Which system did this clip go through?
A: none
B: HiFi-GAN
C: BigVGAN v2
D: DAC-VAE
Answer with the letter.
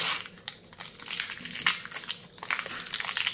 A